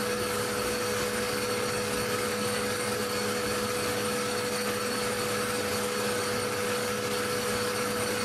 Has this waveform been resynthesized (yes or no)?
yes